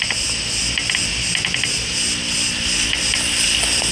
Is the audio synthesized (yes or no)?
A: no